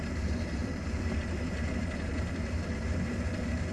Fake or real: real